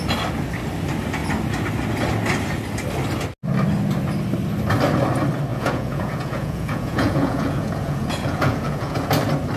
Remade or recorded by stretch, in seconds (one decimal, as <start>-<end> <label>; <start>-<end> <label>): 0.0-5.5 recorded; 5.5-9.1 remade; 9.1-9.6 recorded